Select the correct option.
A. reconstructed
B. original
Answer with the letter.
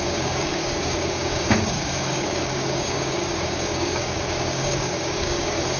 A